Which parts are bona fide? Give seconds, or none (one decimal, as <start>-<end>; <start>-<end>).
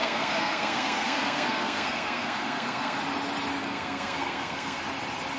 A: 3.0-3.6; 4.8-5.4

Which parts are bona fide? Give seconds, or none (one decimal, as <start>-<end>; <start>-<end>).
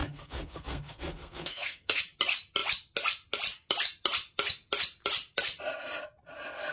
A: 2.0-6.7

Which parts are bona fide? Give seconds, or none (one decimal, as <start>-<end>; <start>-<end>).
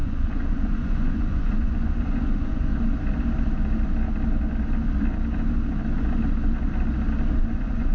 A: 2.7-7.4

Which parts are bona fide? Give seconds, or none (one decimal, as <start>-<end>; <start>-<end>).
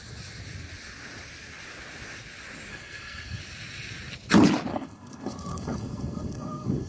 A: 0.0-2.7; 3.4-4.7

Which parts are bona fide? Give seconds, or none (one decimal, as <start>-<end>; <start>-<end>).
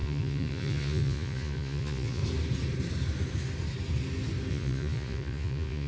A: 2.2-4.5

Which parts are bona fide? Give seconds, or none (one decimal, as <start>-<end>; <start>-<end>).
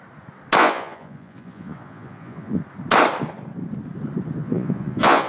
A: 0.0-0.6; 2.6-4.4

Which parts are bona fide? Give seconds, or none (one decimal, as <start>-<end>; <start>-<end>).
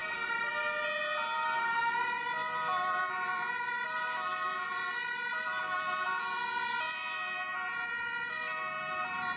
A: 0.5-9.4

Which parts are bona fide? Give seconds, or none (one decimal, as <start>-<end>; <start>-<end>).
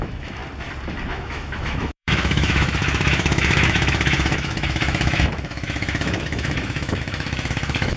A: 0.4-1.1